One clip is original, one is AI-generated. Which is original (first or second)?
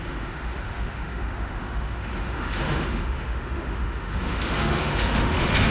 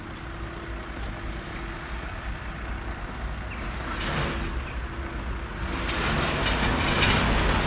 second